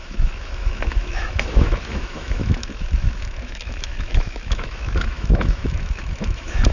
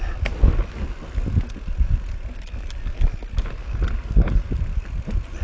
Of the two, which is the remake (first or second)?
first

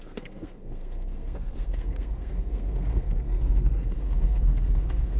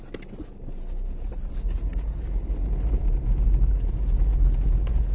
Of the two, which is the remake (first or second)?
first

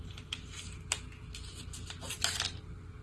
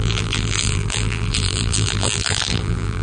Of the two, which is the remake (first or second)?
second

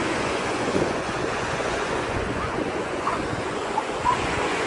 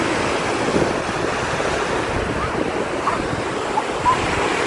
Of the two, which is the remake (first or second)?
first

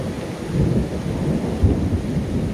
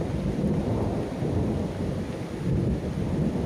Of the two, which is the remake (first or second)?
second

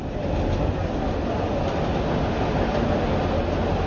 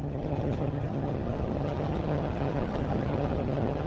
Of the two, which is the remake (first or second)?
second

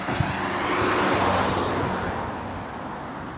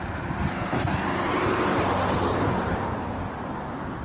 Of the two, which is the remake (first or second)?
second